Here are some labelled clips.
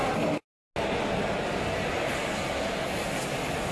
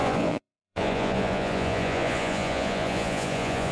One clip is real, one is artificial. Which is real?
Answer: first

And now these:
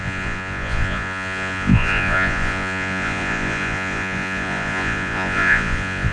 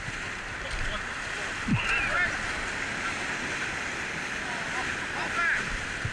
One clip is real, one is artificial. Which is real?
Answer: second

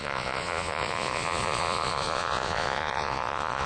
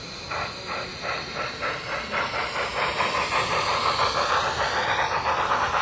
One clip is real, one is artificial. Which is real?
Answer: second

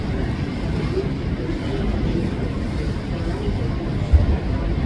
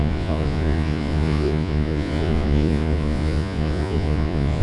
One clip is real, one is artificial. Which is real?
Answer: first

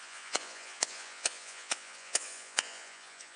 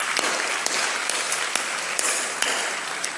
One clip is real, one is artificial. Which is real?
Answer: second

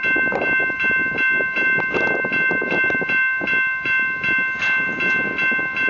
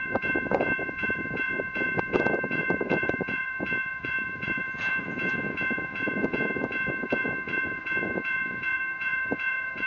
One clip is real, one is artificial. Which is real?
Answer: first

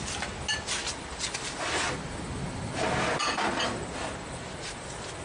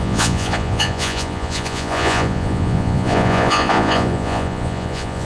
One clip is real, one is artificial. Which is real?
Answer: first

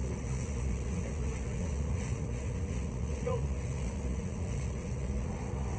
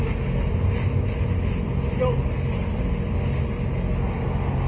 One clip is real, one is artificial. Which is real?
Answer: second